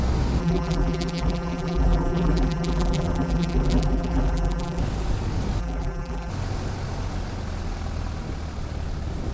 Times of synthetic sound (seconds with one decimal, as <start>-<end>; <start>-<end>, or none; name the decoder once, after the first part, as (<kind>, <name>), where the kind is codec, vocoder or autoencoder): 0.4-4.8 (vocoder, BigVGAN v2); 5.6-6.3